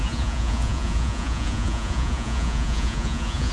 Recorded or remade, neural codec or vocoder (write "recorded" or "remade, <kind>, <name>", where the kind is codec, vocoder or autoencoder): remade, vocoder, Vocos